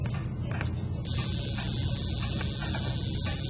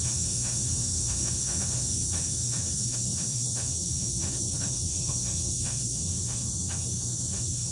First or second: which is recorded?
first